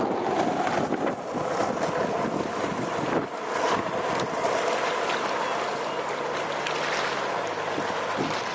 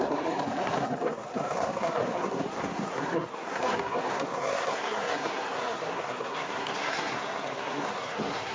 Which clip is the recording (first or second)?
first